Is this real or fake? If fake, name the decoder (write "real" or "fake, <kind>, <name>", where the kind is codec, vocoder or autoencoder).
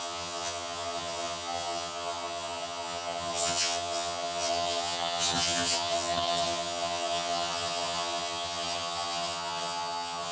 fake, vocoder, HiFi-GAN